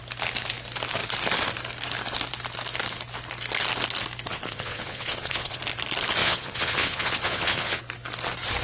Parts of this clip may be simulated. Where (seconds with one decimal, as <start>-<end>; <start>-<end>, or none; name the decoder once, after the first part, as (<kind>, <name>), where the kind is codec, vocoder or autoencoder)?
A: 4.3-5.6 (vocoder, Vocos); 6.2-7.8